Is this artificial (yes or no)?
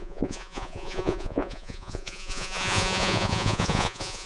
yes